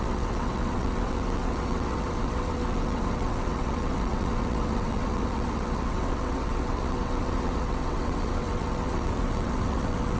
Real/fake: fake